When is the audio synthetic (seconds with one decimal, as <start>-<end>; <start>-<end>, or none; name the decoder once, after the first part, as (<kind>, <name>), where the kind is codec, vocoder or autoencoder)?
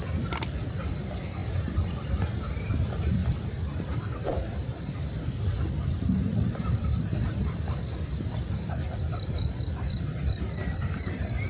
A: 0.0-11.5 (vocoder, BigVGAN v2)